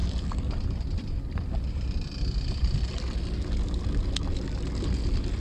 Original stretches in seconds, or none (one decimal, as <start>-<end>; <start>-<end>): 3.2-5.4